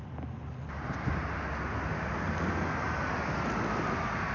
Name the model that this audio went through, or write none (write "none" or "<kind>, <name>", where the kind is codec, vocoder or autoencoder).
none